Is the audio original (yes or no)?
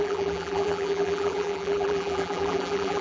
no